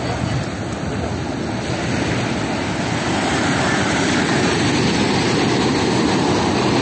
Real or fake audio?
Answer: real